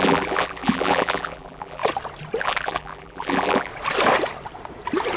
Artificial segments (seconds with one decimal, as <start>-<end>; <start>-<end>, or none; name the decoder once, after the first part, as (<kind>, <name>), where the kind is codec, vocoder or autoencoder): 0.0-1.8 (vocoder, BigVGAN v2); 2.4-3.7